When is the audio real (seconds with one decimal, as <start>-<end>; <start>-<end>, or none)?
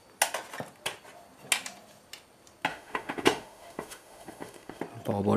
0.0-2.7; 4.8-5.4